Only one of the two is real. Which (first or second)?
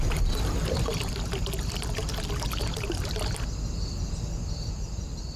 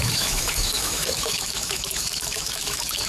first